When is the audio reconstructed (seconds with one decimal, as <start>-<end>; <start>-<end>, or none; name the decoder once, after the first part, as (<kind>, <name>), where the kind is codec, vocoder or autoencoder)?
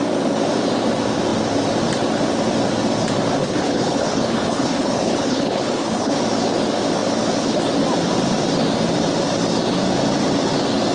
3.4-6.2 (codec, HILCodec)